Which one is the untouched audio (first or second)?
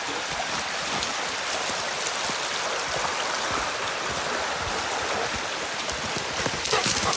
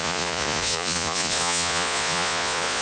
first